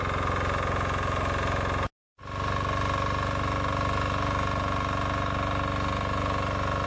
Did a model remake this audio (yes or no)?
no